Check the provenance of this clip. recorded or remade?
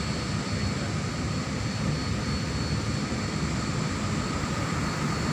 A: recorded